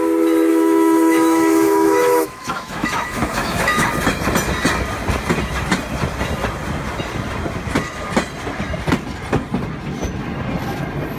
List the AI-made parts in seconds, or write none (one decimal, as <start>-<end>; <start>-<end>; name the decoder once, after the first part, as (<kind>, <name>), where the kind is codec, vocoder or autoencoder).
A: 0.5-3.9 (autoencoder, DAC-VAE)